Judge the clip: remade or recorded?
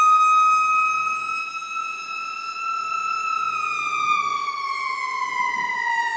recorded